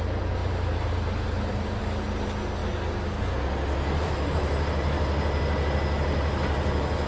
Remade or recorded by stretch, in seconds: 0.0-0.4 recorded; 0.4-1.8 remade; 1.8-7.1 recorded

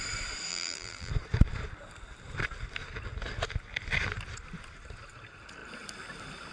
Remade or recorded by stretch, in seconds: 0.0-0.5 recorded; 0.5-1.1 remade; 1.1-6.5 recorded

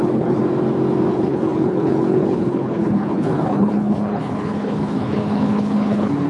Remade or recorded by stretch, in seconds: 0.0-0.4 remade; 0.4-1.1 recorded; 1.1-6.3 remade